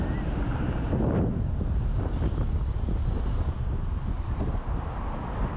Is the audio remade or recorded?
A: recorded